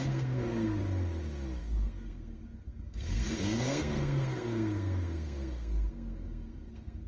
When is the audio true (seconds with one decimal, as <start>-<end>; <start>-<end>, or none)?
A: 0.8-1.6